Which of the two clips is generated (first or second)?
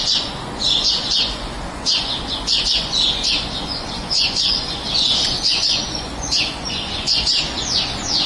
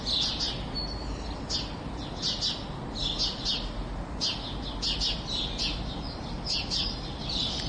first